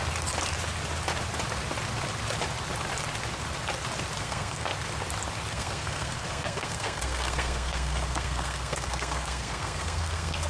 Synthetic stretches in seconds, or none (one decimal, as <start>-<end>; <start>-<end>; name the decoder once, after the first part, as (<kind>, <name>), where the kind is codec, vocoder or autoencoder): 4.2-4.7 (codec, SNAC); 5.5-10.5